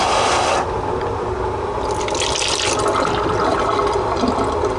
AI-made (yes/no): no